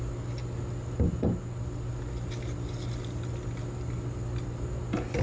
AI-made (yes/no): no